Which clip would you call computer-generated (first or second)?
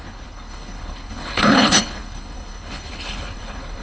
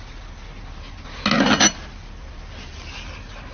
first